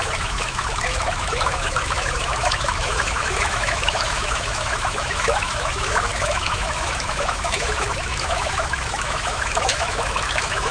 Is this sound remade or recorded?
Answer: remade